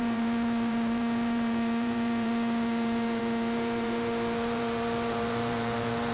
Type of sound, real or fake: fake